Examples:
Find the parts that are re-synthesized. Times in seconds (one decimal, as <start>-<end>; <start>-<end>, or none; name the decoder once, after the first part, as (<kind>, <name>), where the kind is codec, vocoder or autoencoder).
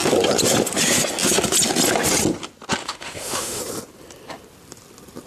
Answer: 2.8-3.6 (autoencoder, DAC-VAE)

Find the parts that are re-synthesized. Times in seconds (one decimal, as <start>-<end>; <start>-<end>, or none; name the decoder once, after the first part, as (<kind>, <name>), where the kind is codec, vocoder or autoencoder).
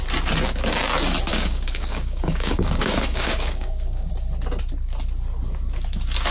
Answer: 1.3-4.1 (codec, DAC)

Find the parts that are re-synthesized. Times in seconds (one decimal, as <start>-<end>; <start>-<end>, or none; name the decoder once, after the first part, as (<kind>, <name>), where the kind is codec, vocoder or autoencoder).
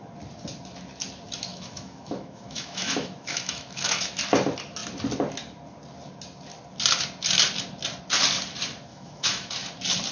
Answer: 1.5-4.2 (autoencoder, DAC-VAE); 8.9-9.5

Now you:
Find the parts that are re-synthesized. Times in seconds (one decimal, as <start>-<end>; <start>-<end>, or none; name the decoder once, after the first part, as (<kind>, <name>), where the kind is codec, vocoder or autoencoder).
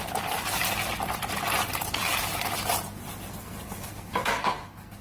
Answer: 3.3-5.0 (codec, SNAC)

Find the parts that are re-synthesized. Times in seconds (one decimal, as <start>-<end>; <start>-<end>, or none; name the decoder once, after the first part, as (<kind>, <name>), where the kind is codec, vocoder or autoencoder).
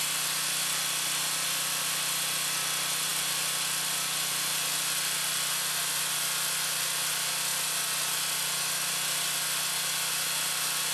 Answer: none